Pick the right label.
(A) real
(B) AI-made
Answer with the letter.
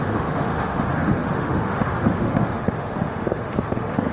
B